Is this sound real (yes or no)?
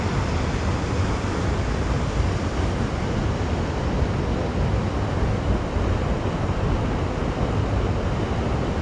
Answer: yes